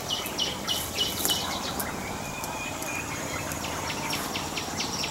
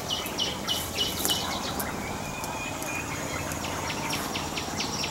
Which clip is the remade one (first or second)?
first